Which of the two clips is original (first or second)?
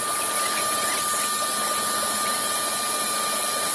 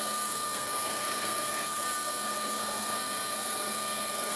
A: first